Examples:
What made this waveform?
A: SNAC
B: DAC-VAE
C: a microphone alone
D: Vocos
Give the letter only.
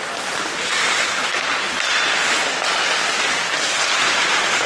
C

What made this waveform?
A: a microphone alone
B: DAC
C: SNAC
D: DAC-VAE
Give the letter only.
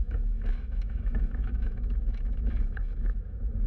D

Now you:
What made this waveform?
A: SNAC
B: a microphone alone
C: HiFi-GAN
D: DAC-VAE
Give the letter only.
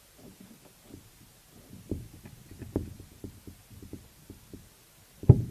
B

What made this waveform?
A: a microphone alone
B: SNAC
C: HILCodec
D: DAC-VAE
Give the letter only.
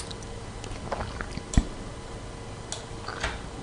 A